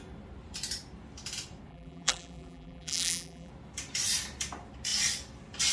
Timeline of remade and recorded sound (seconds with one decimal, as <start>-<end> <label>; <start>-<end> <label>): 0.0-1.7 recorded; 1.7-3.5 remade; 3.5-5.7 recorded